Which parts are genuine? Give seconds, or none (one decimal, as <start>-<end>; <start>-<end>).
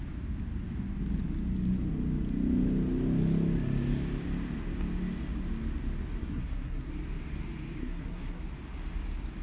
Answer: 0.0-6.2; 6.9-7.8; 8.4-9.4